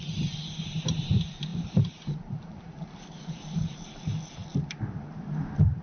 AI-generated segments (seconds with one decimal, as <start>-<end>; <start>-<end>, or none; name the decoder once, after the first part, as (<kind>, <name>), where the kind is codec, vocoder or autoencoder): 0.0-5.8 (vocoder, BigVGAN v2)